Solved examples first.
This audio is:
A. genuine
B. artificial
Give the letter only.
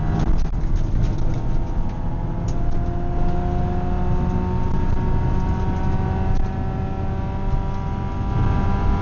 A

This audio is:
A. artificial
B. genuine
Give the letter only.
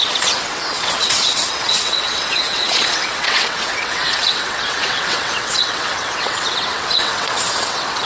A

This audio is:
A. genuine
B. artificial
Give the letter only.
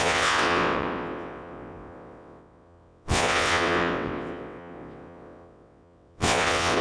B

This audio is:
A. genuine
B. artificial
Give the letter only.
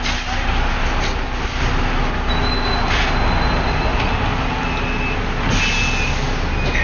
A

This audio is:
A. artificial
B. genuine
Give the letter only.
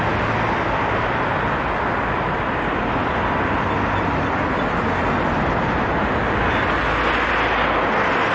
B